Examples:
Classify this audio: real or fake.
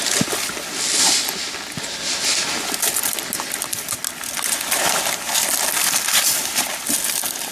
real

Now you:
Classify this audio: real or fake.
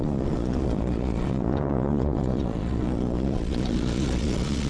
fake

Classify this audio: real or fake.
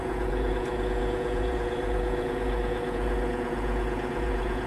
fake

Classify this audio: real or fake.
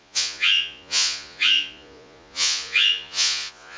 fake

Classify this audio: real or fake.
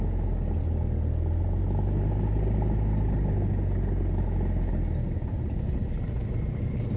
real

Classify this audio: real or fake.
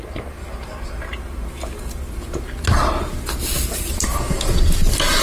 real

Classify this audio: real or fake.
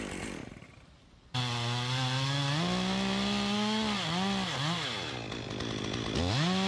real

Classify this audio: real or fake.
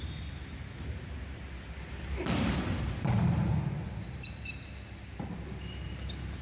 real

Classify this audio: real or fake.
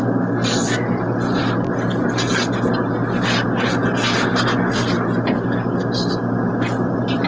real